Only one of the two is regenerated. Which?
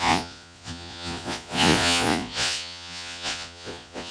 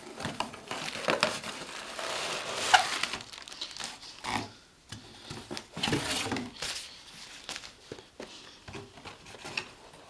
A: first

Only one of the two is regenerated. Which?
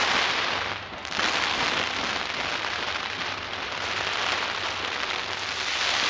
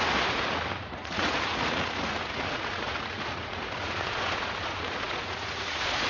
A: second